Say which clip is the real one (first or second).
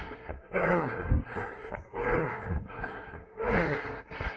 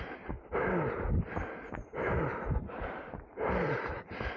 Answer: second